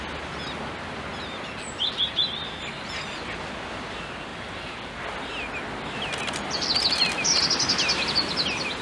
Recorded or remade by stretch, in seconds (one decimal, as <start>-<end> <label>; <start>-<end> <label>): 0.0-8.8 recorded